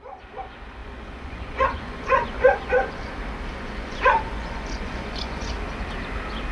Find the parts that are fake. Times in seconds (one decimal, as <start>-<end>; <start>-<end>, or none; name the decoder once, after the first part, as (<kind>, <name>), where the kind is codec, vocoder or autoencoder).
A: 0.8-3.1 (vocoder, Vocos); 3.5-5.5